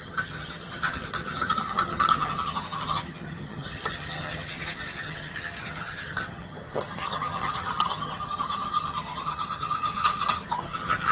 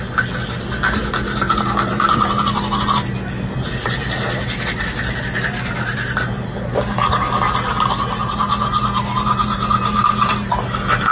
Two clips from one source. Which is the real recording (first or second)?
second